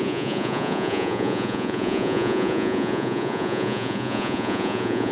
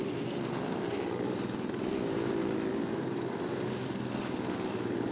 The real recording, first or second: second